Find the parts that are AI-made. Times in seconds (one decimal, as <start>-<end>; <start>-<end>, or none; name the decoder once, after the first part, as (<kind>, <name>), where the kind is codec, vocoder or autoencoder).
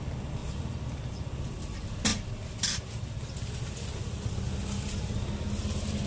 none